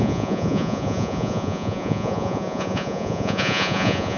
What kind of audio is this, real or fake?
fake